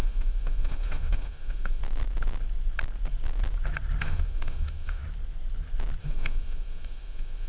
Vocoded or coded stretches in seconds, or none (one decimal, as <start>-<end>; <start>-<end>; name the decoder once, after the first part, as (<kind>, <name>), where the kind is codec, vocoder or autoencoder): 0.0-1.8 (autoencoder, DAC-VAE); 4.0-5.0; 6.0-7.5